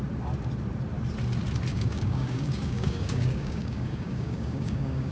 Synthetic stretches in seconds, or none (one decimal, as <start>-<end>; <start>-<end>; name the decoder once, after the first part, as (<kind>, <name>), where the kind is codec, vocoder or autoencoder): 1.7-5.1 (codec, DAC)